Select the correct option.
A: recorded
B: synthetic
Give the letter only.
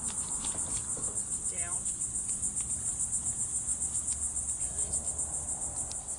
A